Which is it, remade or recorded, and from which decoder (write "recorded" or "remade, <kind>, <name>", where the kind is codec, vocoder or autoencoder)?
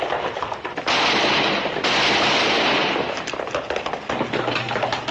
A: recorded